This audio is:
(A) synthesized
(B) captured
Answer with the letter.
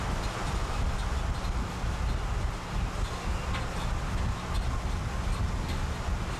B